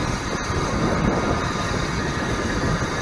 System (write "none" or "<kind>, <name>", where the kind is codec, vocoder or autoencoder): none